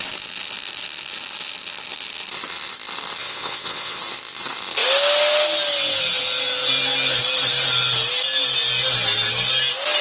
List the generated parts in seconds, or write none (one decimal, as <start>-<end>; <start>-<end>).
3.2-4.0